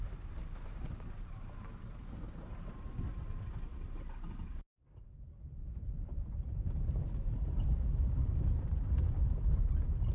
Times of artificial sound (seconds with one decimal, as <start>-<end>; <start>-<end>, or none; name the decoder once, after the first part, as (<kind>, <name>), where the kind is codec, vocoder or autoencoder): 0.0-3.7 (vocoder, BigVGAN v2); 5.4-10.1